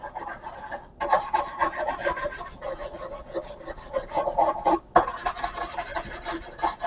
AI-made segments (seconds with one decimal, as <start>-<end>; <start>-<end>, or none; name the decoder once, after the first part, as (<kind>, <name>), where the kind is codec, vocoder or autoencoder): 5.9-6.4 (vocoder, BigVGAN v2)